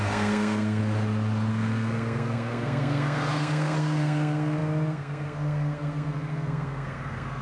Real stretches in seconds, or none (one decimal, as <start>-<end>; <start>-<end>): 0.8-1.5